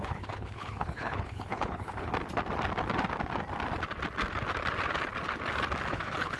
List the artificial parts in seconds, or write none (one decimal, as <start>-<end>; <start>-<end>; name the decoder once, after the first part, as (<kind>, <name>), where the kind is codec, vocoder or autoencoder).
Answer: 0.0-2.1 (codec, HILCodec); 5.9-6.4